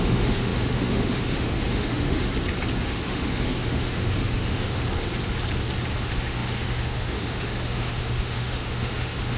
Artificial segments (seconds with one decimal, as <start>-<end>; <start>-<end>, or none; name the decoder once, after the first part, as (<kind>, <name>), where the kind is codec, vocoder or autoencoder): 0.0-2.3 (autoencoder, DAC-VAE); 2.8-4.8; 6.0-9.4